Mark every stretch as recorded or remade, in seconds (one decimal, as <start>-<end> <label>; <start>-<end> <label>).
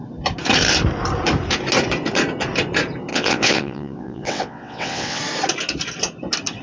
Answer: 0.0-3.1 recorded; 3.1-5.2 remade; 5.2-6.6 recorded